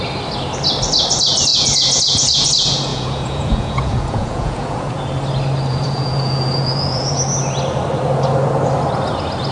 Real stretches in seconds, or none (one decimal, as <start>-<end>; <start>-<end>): 0.0-1.5; 2.5-2.9; 5.0-5.7; 7.2-9.5